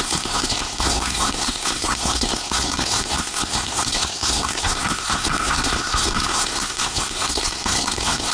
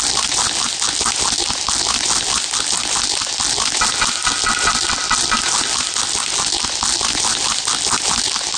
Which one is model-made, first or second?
first